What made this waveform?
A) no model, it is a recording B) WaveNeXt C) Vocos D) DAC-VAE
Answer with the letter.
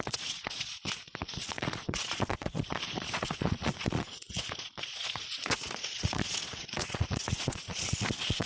C